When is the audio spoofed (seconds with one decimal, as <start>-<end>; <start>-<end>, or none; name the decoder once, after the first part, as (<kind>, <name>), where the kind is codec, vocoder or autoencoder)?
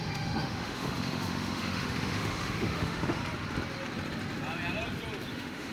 0.0-3.2 (autoencoder, DAC-VAE); 5.3-5.7